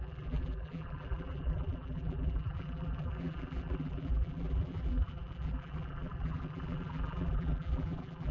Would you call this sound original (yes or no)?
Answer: no